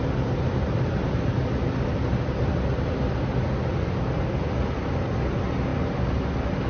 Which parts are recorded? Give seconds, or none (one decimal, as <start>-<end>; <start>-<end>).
0.0-6.7